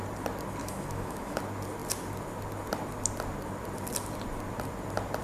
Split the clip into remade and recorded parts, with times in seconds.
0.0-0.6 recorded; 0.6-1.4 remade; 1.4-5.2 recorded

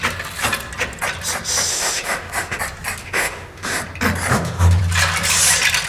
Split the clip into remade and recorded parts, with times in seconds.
0.0-1.7 recorded; 1.7-2.6 remade; 2.6-3.0 recorded; 3.0-3.8 remade; 3.8-4.3 recorded; 4.3-4.8 remade; 4.8-5.9 recorded

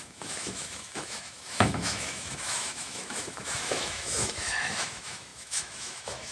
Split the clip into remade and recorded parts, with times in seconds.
0.0-6.3 remade

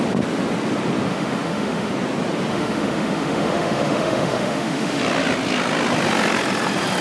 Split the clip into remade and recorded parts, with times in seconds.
0.0-1.1 recorded; 1.1-1.9 remade; 1.9-2.5 recorded; 2.5-5.0 remade; 5.0-7.0 recorded

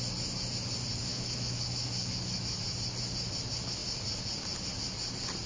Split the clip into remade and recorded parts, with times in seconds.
0.0-1.1 recorded; 1.1-2.6 remade; 2.6-5.5 recorded

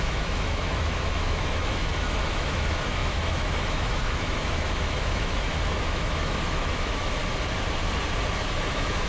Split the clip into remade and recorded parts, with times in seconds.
0.0-7.2 remade; 7.2-8.6 recorded; 8.6-9.1 remade

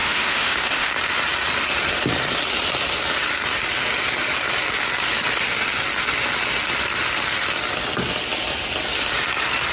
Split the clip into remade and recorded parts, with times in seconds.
0.0-0.9 remade; 0.9-9.7 recorded

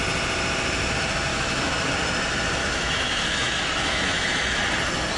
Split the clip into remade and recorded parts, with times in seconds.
0.0-1.3 recorded; 1.3-1.9 remade; 1.9-2.6 recorded; 2.6-4.6 remade; 4.6-5.2 recorded